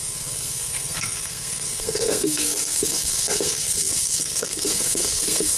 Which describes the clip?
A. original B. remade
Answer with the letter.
B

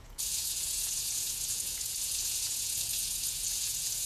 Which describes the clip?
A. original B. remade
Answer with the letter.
B